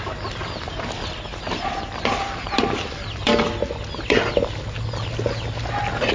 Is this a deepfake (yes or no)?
no